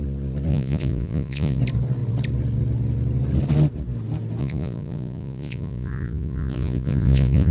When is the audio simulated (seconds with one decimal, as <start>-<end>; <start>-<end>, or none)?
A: 0.5-1.6; 4.4-7.5